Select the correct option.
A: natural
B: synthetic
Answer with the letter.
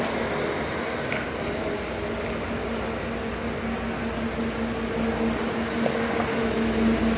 A